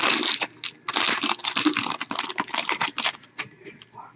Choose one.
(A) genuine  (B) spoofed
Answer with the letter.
A